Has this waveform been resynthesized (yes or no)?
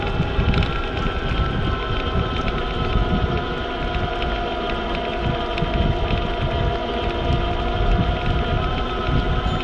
no